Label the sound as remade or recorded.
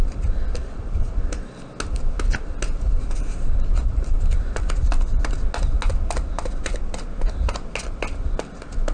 recorded